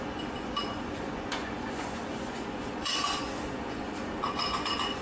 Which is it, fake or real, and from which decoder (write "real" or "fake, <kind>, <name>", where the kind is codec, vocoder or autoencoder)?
fake, vocoder, Vocos